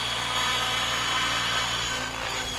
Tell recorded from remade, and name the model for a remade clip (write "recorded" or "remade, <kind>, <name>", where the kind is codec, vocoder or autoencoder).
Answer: recorded